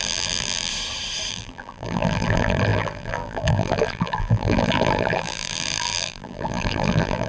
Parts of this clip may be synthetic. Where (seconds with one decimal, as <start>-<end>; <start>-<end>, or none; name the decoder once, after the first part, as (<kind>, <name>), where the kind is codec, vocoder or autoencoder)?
0.0-0.7 (vocoder, BigVGAN v2); 1.3-7.3